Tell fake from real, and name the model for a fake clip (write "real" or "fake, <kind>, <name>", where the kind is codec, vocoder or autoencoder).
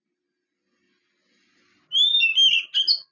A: real